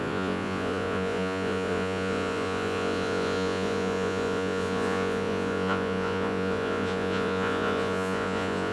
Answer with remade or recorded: remade